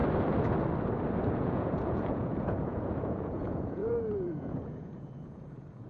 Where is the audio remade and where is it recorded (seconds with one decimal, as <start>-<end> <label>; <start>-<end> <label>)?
0.0-1.4 recorded; 1.4-5.9 remade